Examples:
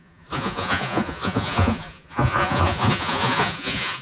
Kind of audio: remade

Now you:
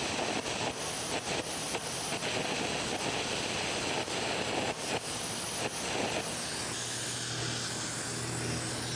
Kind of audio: recorded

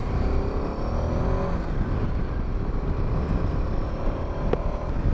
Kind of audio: recorded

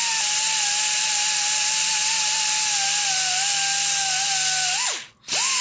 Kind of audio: recorded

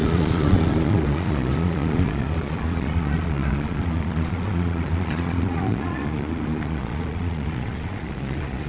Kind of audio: remade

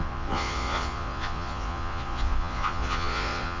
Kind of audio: remade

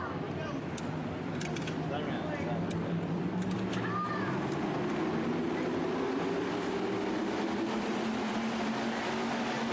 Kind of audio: recorded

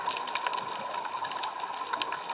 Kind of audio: recorded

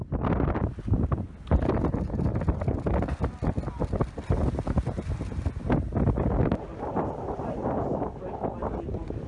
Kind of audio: recorded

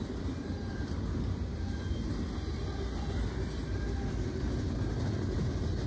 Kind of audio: recorded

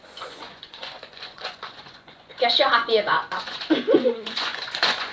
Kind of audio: remade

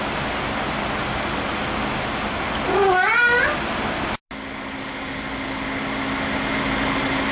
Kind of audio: recorded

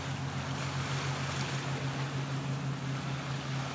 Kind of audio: recorded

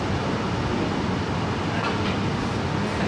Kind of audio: recorded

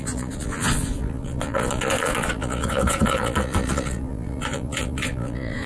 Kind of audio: remade